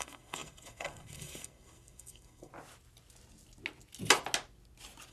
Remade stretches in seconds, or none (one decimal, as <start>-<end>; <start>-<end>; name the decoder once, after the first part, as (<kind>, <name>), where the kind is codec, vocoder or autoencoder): 0.0-2.5 (codec, SNAC)